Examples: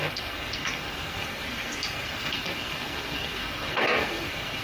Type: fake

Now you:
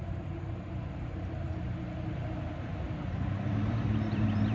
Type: fake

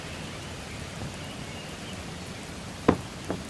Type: real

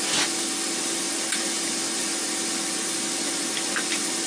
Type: real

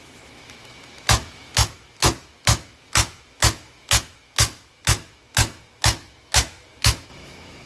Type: fake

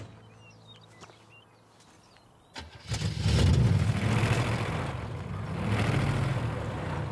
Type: real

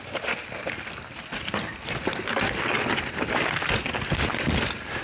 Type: real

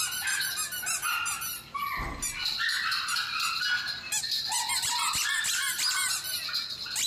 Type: real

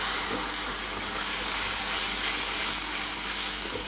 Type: fake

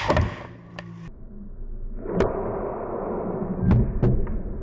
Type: real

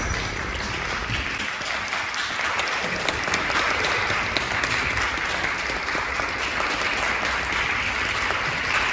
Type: real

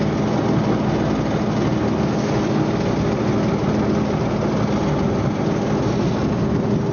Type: real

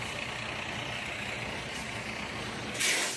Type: real